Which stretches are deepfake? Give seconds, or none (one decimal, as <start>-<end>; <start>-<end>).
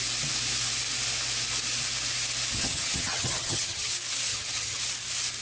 2.6-3.9; 4.3-4.8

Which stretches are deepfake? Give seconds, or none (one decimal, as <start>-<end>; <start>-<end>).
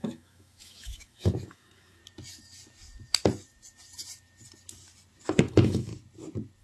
0.0-2.0; 5.4-5.9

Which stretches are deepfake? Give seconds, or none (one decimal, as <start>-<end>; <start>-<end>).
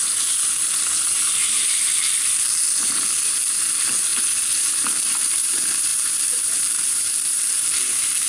1.5-4.1; 5.2-8.3